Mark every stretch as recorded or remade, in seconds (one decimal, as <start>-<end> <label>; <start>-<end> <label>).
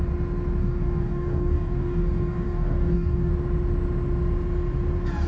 0.0-0.6 recorded; 0.6-3.3 remade; 3.3-5.3 recorded